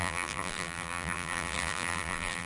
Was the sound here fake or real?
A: fake